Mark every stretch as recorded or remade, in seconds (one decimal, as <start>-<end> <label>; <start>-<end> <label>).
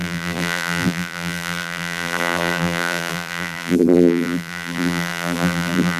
0.0-6.0 remade